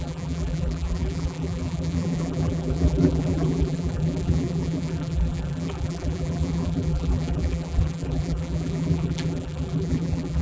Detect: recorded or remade remade